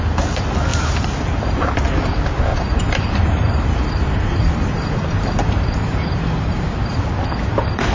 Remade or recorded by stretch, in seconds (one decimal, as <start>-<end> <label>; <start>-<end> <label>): 0.0-2.5 recorded; 2.5-7.1 remade; 7.1-7.9 recorded